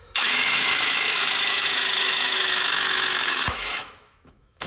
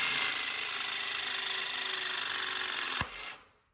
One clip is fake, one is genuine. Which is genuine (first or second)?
second